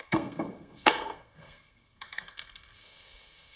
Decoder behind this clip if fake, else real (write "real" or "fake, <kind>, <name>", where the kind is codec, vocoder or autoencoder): fake, codec, SNAC